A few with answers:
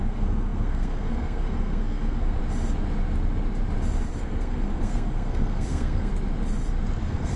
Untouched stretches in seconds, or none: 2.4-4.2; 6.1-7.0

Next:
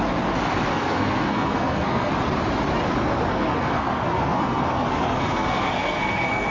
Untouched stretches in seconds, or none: 0.0-0.7; 2.1-3.3

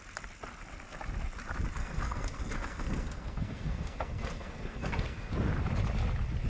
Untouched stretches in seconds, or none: 0.0-1.8; 5.3-6.5

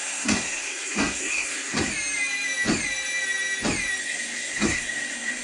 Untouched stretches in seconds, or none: 1.9-4.0

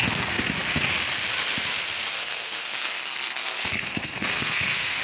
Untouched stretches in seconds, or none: 0.0-2.2

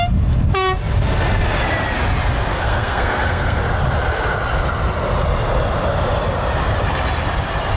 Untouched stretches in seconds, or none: 0.0-2.5; 3.6-7.8